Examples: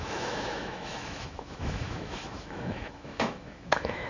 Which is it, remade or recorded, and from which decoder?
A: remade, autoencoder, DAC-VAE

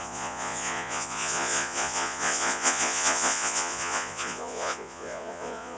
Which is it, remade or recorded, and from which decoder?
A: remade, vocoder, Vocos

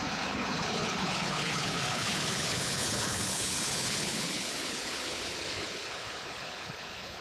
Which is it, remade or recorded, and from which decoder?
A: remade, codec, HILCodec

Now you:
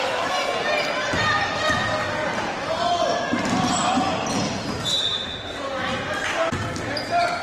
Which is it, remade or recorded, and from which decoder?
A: recorded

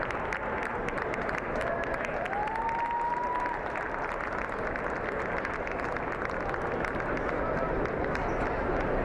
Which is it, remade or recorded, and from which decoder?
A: recorded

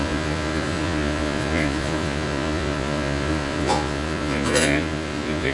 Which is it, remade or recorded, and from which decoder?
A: remade, vocoder, Vocos